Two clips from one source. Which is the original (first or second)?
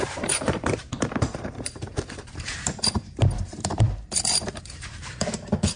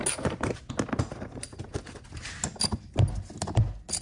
second